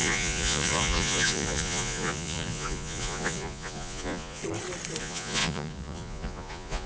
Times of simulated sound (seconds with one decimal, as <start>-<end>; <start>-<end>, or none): 0.0-4.4; 5.0-6.9